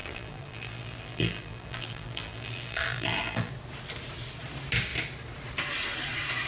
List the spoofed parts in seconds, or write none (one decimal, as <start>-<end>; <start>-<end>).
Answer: 0.0-3.5